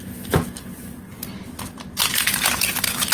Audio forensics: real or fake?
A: real